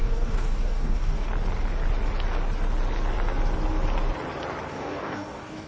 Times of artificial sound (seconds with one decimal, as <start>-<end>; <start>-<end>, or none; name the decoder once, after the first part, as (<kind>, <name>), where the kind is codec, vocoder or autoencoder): 0.0-1.3 (codec, DAC); 4.7-5.7